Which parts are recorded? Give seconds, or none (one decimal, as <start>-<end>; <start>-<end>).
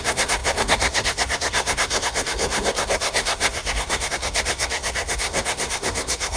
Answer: none